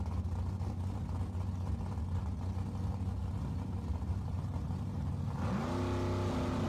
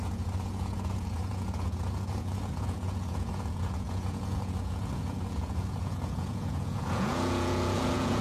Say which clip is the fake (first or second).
second